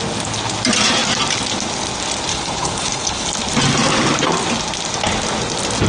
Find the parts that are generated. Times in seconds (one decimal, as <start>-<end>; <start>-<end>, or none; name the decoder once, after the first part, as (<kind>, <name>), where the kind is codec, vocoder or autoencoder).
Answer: 2.3-3.3 (codec, HILCodec)